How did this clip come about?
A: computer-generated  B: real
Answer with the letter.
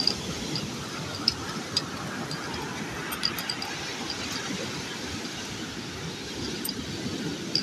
B